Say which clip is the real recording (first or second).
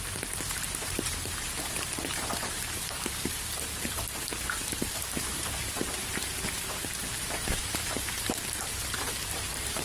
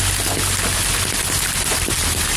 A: second